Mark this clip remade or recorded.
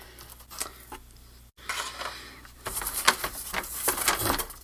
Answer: recorded